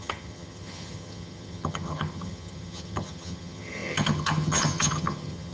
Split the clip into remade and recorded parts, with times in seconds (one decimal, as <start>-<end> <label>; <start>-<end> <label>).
0.0-5.5 remade